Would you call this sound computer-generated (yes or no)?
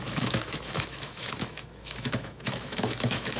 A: yes